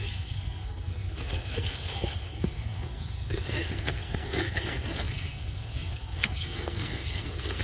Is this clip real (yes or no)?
no